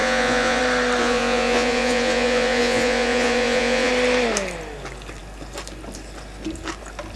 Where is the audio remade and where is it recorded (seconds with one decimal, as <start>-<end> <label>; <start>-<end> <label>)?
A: 0.0-0.6 remade; 0.6-1.0 recorded; 1.0-3.9 remade; 3.9-7.2 recorded